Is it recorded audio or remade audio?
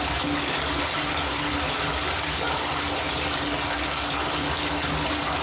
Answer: recorded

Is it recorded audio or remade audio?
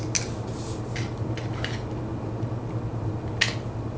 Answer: recorded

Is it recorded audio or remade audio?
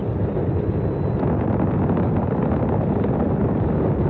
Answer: recorded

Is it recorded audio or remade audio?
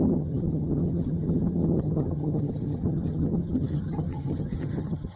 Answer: remade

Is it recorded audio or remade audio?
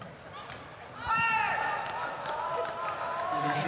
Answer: recorded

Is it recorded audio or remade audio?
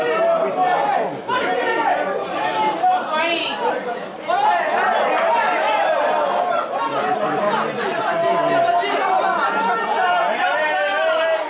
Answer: recorded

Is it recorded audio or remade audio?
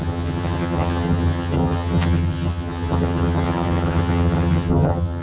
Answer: remade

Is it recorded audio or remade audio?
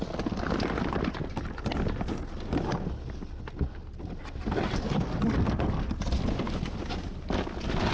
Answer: recorded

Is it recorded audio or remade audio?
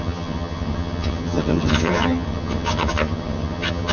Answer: remade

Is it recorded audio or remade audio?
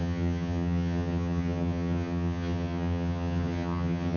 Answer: remade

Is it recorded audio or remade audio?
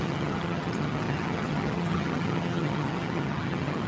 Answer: remade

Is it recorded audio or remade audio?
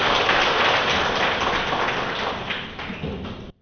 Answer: recorded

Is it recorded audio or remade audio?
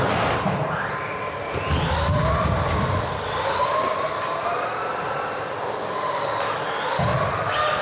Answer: recorded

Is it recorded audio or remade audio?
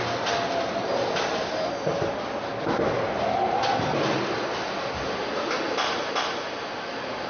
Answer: recorded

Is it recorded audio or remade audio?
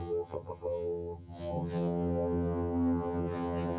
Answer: remade